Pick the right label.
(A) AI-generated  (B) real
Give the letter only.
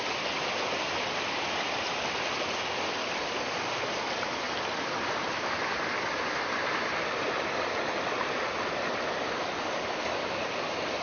B